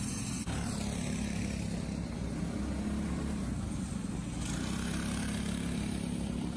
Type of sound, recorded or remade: recorded